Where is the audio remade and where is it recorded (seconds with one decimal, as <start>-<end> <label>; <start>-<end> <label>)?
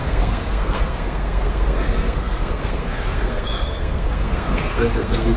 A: 0.0-5.4 remade